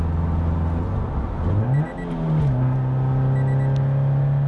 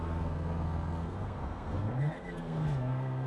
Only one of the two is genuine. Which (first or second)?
first